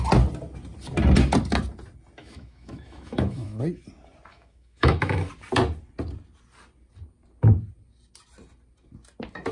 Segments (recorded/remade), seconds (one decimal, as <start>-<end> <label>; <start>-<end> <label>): 0.0-2.2 recorded; 2.2-3.6 remade; 3.6-4.3 recorded; 4.3-5.3 remade; 5.3-9.5 recorded